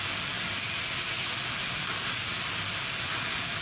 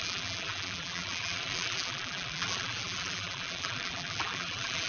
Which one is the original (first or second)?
first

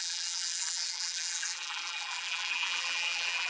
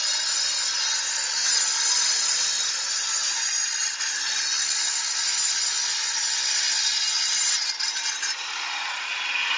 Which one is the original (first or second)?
second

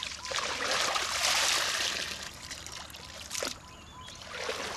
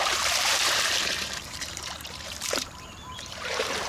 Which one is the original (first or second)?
first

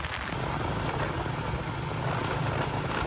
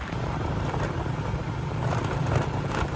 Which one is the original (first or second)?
first